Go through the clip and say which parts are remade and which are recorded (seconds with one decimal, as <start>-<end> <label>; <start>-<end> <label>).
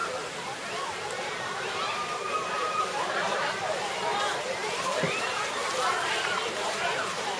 0.0-3.7 remade; 3.7-4.6 recorded; 4.6-7.4 remade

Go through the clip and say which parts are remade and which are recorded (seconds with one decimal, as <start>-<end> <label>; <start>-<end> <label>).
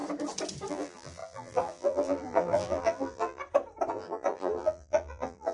0.0-0.7 recorded; 0.7-3.4 remade; 3.4-3.9 recorded; 3.9-5.5 remade